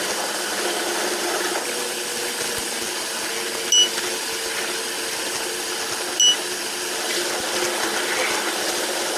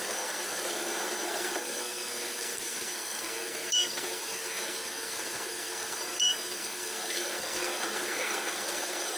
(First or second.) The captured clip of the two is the first